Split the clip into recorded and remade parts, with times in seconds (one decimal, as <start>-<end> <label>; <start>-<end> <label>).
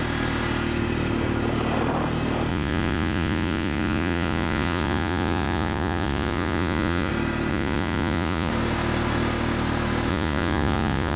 0.0-2.5 recorded; 2.5-7.1 remade; 7.1-7.5 recorded; 7.5-8.5 remade; 8.5-10.1 recorded; 10.1-11.2 remade